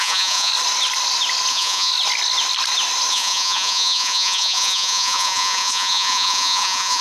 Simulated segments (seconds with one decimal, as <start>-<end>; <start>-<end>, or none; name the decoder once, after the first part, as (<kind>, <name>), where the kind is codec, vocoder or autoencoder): 0.0-0.5 (vocoder, Vocos); 1.5-1.9; 3.1-7.0